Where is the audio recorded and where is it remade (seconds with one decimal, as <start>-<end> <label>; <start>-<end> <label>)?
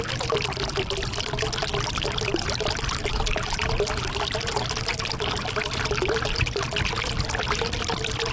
0.0-1.6 recorded; 1.6-3.6 remade; 3.6-8.3 recorded